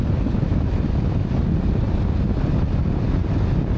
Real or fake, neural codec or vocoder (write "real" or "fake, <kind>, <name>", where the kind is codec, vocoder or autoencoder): real